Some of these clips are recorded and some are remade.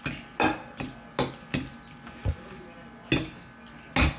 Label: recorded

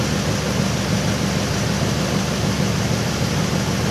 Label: recorded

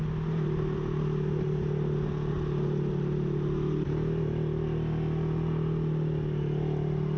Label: recorded